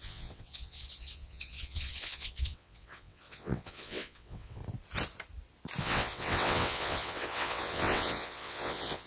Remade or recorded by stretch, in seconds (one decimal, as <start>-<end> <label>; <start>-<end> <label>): 0.0-4.6 remade; 4.6-5.8 recorded; 5.8-9.1 remade